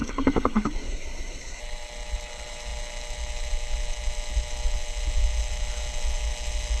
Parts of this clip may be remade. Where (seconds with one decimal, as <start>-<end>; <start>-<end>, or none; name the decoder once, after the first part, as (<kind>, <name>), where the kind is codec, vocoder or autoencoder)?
0.0-1.6 (codec, SNAC)

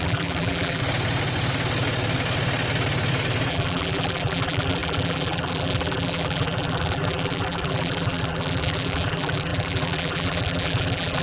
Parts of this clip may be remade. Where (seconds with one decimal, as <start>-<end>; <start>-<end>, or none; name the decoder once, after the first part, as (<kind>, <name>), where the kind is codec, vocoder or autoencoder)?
0.0-0.8 (vocoder, BigVGAN v2); 3.5-11.2

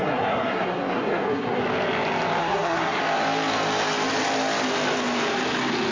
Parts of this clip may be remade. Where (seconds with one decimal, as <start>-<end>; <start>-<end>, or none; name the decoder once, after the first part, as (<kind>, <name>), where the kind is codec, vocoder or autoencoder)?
0.0-1.6 (codec, SNAC); 2.4-3.0

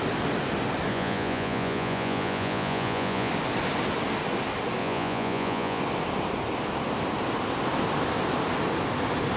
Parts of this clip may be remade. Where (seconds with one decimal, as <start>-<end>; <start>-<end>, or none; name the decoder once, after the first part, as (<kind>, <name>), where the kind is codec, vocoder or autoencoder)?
0.9-3.3 (vocoder, Vocos); 4.8-5.8

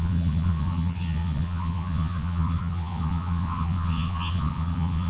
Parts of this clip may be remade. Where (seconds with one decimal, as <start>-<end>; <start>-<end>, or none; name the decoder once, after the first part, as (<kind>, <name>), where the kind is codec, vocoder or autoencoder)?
0.0-5.1 (vocoder, Vocos)

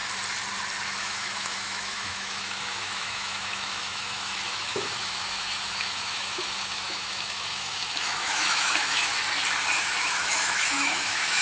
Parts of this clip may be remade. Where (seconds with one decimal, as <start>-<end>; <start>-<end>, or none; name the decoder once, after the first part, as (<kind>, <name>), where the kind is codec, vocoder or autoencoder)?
1.0-9.1 (autoencoder, DAC-VAE); 9.8-11.4

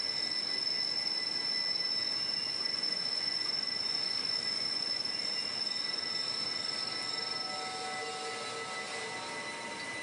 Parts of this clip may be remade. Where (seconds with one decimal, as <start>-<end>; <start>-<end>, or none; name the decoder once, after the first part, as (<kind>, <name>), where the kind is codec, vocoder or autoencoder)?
2.4-5.3 (vocoder, Vocos)